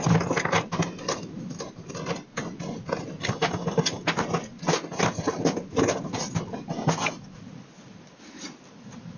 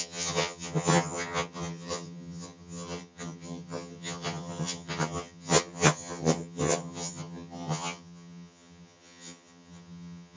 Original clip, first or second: first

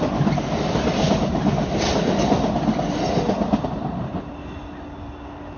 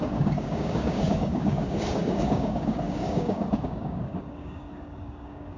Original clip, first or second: first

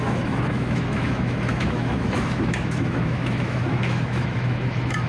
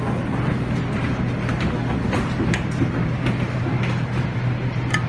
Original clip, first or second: second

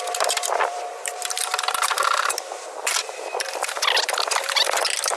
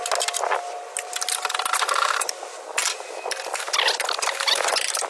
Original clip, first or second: second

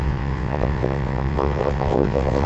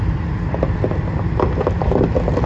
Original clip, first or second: second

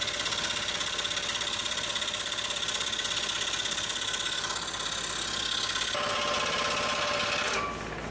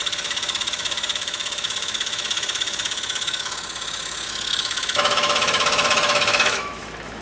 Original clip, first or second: first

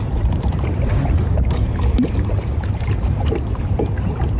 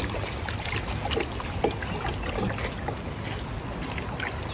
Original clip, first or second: second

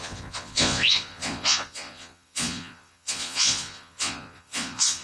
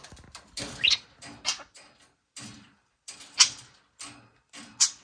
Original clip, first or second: second